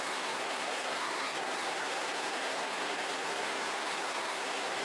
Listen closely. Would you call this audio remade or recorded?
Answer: remade